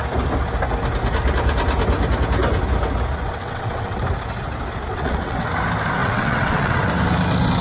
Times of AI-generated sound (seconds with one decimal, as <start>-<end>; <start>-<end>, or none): 3.3-4.0; 4.9-5.5; 6.0-6.8